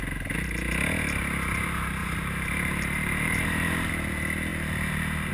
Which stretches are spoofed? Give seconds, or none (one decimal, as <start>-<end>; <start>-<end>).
2.0-3.9